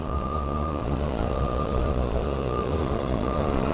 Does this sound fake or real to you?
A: fake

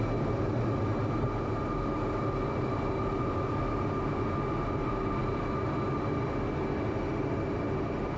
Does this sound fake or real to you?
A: real